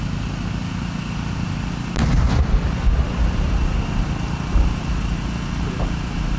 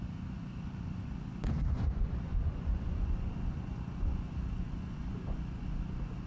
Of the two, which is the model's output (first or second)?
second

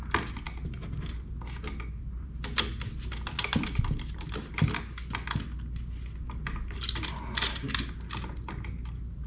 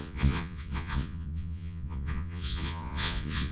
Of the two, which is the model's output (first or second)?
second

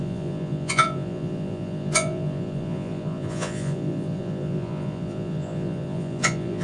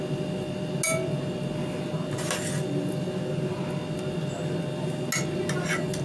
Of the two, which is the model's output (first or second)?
first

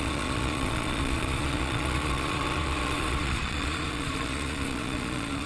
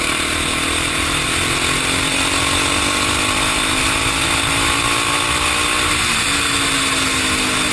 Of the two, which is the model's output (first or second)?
first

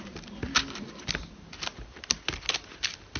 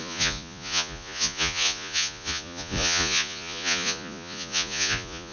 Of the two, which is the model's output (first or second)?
second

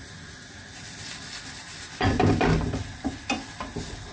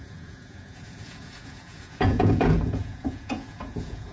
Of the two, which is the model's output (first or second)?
second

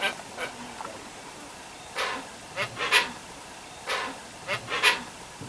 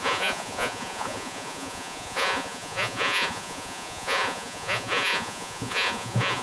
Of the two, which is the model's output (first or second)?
second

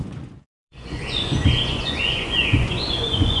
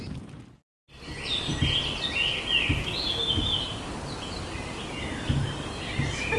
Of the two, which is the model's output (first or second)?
first